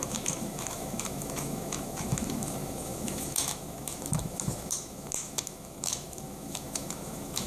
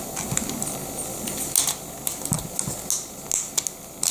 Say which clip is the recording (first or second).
second